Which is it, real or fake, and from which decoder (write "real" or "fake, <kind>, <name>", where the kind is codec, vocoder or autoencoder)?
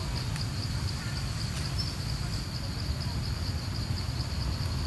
real